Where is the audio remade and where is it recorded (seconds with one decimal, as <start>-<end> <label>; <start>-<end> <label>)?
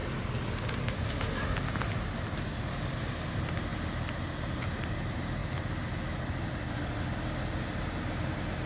0.0-8.7 recorded